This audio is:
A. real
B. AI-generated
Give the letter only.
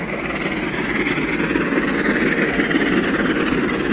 A